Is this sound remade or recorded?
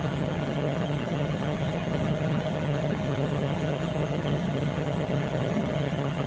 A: remade